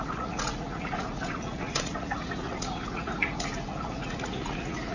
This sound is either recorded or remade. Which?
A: remade